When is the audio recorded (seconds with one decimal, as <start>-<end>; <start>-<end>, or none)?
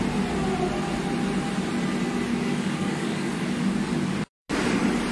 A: 0.0-2.3; 4.5-5.1